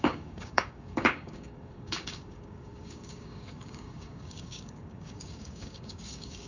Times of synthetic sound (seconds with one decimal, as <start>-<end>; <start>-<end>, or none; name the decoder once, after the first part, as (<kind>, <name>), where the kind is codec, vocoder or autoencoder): 0.0-6.5 (codec, DAC)